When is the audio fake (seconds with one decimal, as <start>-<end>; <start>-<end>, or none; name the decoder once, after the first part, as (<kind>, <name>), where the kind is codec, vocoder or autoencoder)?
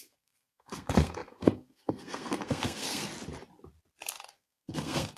0.0-3.1 (codec, SNAC); 4.1-5.2